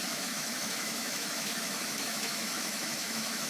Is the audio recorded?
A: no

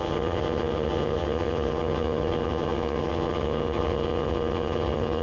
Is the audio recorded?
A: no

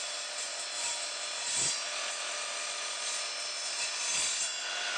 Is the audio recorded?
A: yes